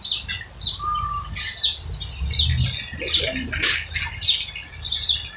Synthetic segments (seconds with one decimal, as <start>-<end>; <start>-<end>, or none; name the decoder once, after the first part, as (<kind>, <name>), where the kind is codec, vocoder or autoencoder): none